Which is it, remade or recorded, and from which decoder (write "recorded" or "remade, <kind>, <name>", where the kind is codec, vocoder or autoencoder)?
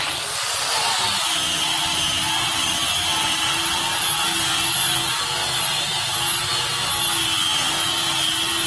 recorded